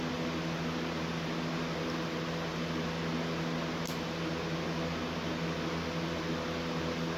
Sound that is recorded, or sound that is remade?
recorded